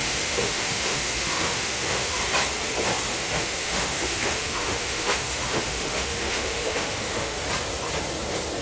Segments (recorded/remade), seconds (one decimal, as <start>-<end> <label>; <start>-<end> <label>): 0.0-2.2 remade; 2.2-3.1 recorded; 3.1-7.4 remade; 7.4-8.6 recorded